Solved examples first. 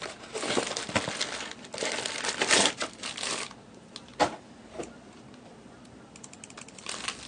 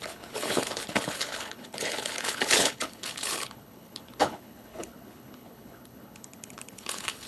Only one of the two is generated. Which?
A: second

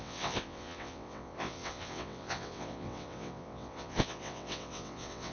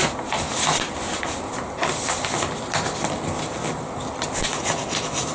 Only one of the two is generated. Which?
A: first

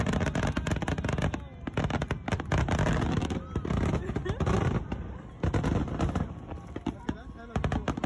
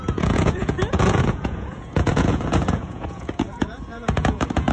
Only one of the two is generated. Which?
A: second